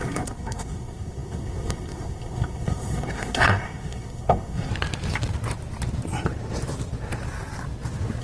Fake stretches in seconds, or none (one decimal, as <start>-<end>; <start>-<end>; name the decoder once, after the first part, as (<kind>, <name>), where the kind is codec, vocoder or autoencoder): 0.0-4.7 (codec, SNAC)